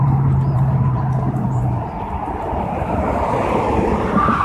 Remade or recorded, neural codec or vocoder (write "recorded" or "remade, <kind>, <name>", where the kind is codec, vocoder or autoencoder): remade, vocoder, BigVGAN v2